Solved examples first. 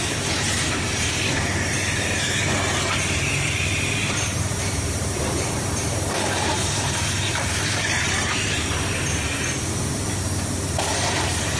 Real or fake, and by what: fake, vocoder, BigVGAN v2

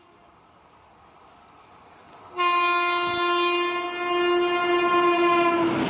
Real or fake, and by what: real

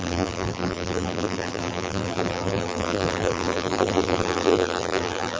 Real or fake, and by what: fake, vocoder, BigVGAN v2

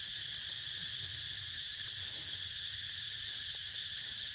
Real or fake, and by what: fake, vocoder, BigVGAN v2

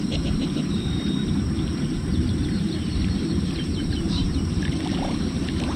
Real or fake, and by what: fake, vocoder, BigVGAN v2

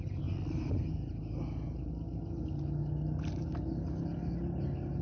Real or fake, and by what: real